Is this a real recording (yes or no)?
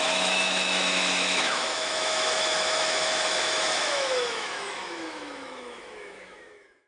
no